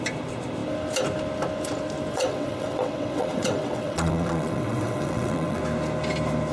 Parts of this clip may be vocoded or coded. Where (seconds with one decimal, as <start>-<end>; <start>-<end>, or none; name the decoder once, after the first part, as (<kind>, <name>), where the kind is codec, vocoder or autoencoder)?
2.1-5.6 (vocoder, WaveNeXt)